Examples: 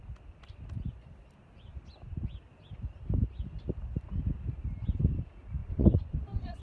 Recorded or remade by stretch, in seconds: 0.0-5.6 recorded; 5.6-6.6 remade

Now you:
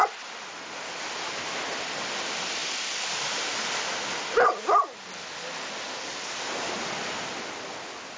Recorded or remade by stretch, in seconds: 0.0-8.2 recorded

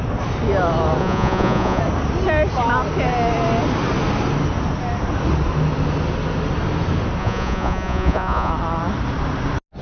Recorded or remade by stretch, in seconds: 0.0-1.0 recorded; 1.0-1.8 remade; 1.8-7.2 recorded; 7.2-8.5 remade; 8.5-9.8 recorded